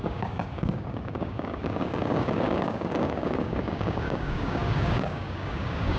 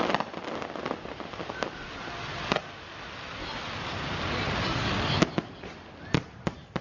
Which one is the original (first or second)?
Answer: second